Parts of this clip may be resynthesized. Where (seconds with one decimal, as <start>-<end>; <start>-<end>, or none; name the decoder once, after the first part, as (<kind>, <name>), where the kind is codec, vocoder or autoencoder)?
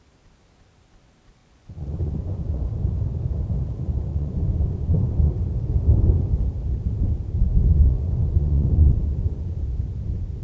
1.4-2.8 (vocoder, Vocos); 4.1-5.3; 7.4-9.5